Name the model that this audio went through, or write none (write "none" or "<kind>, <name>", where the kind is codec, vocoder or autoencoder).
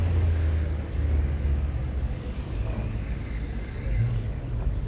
codec, DAC